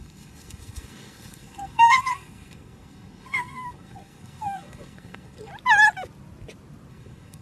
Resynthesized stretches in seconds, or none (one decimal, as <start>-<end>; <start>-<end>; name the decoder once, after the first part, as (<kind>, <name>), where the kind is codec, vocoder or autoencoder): 0.0-5.5 (codec, SNAC); 6.9-7.4